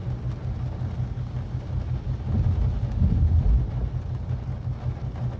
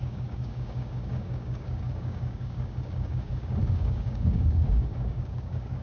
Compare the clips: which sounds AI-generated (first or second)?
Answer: second